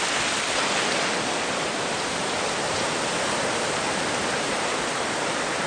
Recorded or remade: recorded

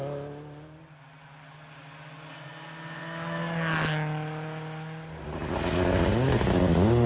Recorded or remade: recorded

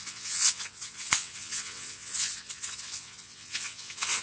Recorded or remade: remade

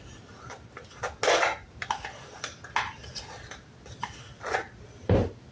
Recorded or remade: recorded